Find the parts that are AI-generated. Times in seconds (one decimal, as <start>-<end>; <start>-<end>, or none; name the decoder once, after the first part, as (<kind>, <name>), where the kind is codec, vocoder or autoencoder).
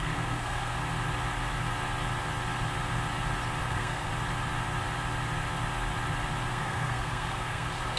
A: 0.0-0.8 (codec, SNAC); 3.6-4.1; 6.5-8.0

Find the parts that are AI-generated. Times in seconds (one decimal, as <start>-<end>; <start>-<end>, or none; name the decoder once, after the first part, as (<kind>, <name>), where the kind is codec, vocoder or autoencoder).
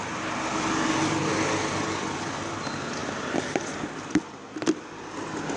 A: none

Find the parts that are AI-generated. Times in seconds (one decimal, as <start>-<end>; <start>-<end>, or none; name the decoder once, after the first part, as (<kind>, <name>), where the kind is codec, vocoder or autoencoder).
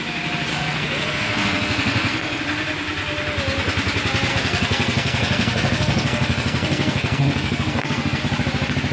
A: 0.5-2.4 (codec, SNAC); 4.3-8.2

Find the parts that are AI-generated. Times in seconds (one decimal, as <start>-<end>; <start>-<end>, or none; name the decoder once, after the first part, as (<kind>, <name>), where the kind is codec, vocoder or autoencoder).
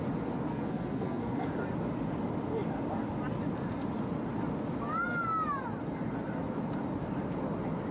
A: 0.5-1.5 (codec, SNAC)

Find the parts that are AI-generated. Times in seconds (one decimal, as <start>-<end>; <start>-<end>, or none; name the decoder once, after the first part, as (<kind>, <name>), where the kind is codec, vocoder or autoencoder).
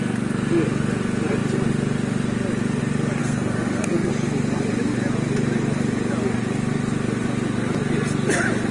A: 3.2-4.1 (codec, SNAC)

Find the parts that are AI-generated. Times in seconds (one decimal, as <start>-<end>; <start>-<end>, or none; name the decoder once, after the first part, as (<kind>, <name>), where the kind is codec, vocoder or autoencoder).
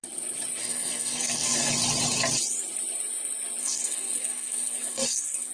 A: 0.6-1.7 (codec, SNAC); 3.6-5.5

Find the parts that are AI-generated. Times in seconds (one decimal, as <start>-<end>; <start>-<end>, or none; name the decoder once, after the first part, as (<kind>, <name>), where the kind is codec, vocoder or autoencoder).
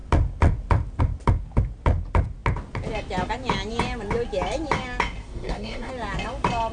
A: 5.2-5.9 (codec, SNAC)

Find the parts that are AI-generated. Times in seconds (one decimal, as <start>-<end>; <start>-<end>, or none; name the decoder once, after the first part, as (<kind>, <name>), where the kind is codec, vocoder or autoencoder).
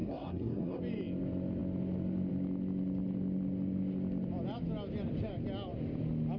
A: 0.0-0.8 (codec, SNAC)